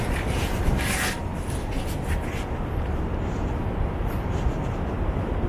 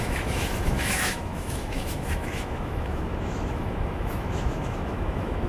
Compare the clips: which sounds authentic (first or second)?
first